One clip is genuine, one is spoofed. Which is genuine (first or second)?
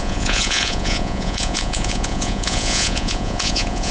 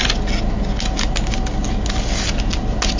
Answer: second